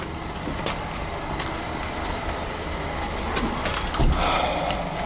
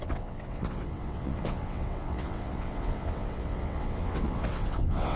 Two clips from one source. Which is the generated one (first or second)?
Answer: second